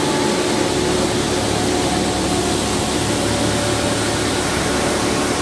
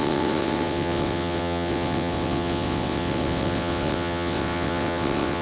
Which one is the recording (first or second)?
first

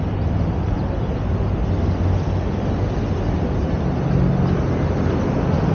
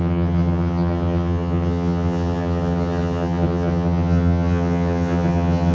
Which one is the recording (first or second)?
first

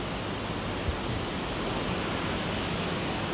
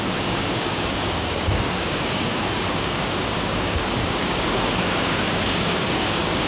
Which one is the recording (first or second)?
first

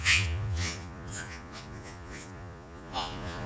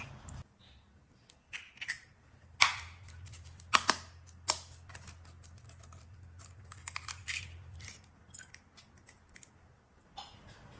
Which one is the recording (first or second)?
second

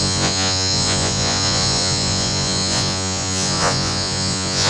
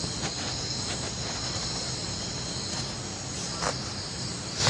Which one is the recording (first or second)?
second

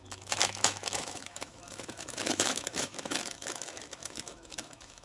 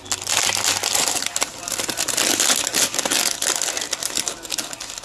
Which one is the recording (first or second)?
second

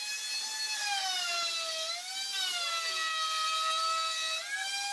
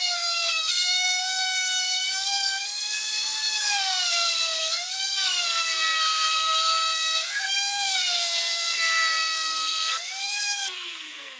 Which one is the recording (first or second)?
first